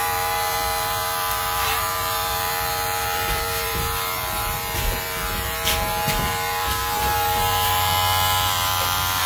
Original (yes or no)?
no